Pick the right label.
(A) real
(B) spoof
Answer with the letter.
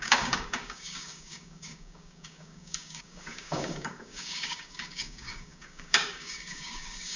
B